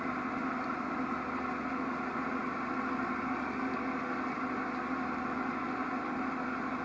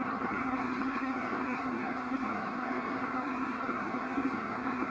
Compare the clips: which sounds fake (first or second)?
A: second